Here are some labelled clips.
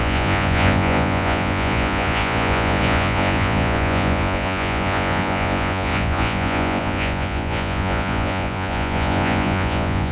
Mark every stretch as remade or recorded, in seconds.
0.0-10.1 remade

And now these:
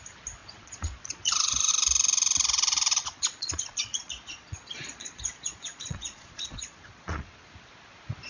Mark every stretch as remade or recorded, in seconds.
0.0-0.4 recorded; 0.4-1.7 remade; 1.7-3.0 recorded; 3.0-7.5 remade; 7.5-8.3 recorded